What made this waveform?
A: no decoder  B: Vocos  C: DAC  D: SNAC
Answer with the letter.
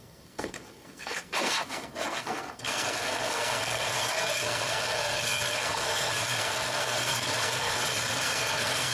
D